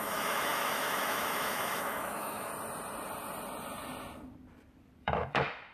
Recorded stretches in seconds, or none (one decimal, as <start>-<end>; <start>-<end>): 2.5-5.0